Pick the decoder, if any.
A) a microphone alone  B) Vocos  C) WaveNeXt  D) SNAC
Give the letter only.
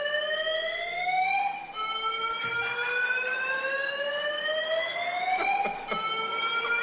A